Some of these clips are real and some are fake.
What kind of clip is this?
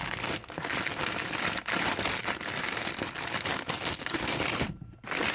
real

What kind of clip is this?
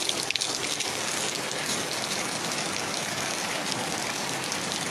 fake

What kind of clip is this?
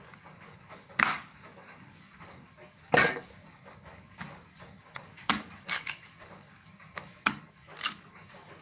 fake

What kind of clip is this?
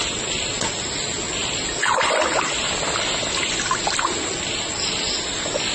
real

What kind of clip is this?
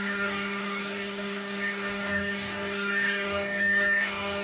fake